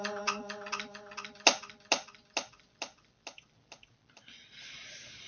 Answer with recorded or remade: recorded